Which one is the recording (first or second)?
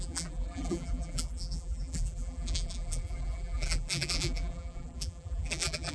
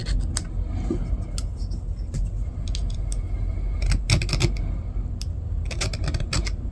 second